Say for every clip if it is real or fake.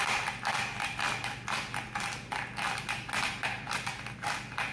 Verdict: real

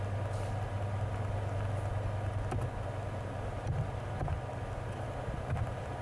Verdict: real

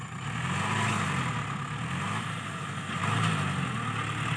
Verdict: real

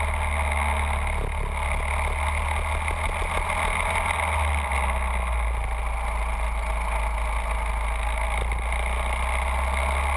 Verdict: real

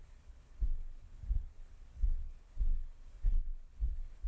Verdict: fake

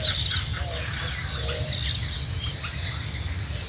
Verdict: real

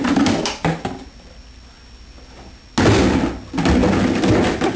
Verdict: real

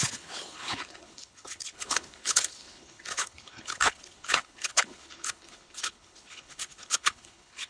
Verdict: fake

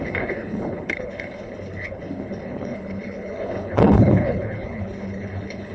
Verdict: fake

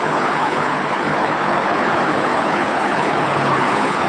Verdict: fake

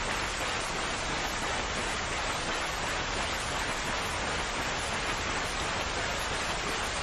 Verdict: real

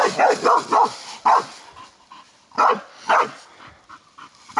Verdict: real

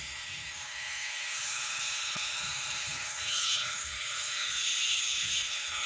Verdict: fake